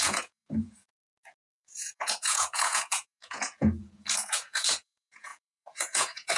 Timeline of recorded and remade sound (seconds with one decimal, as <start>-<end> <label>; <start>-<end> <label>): 0.0-6.4 remade